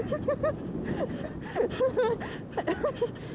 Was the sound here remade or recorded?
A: recorded